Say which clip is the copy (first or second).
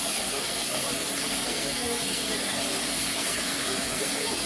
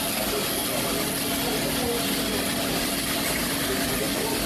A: first